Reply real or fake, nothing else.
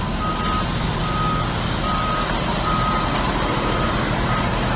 real